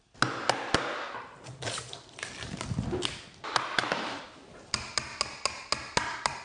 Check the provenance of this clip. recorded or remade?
recorded